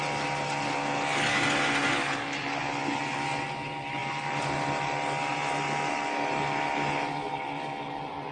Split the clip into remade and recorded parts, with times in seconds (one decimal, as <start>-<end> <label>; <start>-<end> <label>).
0.0-8.3 recorded